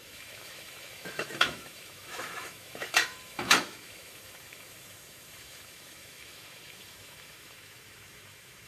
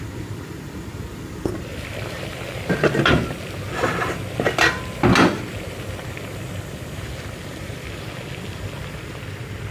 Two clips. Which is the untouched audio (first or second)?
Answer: second